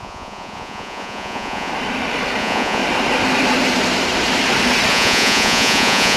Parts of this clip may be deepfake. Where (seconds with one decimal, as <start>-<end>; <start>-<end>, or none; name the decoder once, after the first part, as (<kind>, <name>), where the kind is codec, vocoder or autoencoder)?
0.0-1.7 (vocoder, Vocos); 2.4-2.8; 4.9-6.2